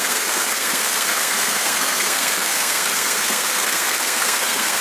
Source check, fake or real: fake